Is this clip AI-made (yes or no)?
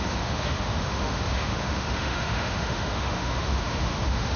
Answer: yes